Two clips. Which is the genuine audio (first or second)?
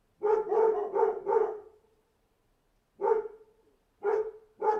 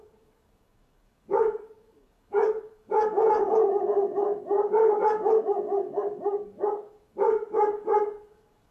first